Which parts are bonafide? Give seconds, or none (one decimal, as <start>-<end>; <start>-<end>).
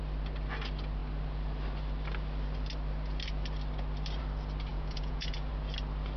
0.0-4.7; 5.5-6.2